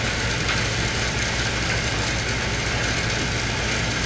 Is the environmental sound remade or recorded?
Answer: recorded